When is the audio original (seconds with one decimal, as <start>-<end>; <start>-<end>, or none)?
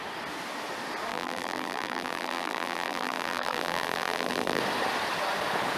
0.0-1.1; 4.6-5.8